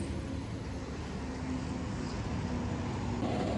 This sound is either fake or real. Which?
real